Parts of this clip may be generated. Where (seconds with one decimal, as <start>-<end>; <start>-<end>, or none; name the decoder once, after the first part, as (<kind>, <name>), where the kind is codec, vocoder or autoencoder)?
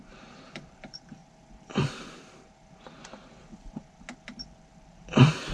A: 0.0-1.2 (vocoder, BigVGAN v2); 4.5-5.5